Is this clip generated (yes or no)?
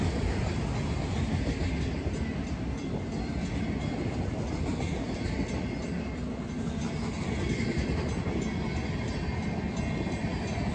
no